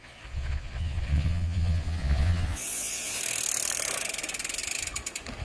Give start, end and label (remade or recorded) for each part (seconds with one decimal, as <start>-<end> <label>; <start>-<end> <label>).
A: 0.0-3.2 remade; 3.2-5.4 recorded